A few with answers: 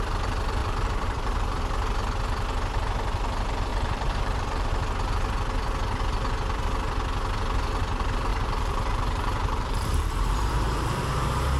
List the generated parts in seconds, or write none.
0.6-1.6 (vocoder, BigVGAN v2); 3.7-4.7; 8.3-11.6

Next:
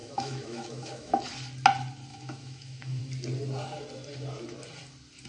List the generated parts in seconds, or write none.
0.0-1.2 (autoencoder, DAC-VAE); 2.1-3.0

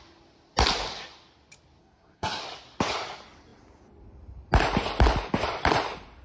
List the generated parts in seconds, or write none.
1.8-2.4 (codec, SNAC)

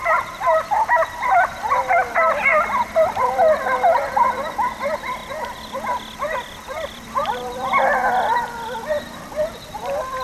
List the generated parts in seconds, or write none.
0.0-8.0 (vocoder, BigVGAN v2); 9.6-10.2

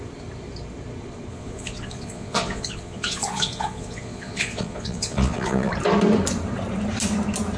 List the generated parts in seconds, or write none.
1.3-5.7 (vocoder, Vocos)

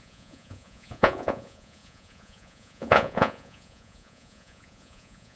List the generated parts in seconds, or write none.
0.0-5.4 (vocoder, Vocos)